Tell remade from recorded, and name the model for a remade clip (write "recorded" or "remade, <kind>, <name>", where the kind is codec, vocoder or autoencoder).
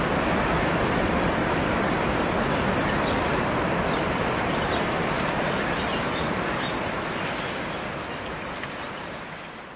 recorded